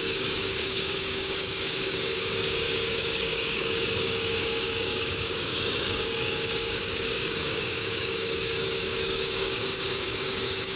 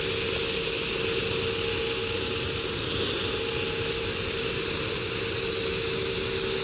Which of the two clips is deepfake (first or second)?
first